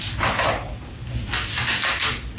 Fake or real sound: real